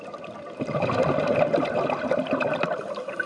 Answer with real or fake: real